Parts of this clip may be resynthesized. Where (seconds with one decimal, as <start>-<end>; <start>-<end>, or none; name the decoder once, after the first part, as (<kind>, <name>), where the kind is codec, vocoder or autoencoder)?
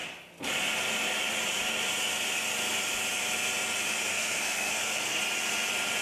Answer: 4.1-5.2 (codec, SNAC)